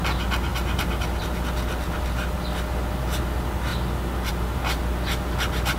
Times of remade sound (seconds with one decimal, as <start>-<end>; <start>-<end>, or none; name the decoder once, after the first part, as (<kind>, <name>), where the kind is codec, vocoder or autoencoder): none